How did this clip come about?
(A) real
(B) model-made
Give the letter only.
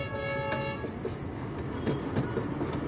A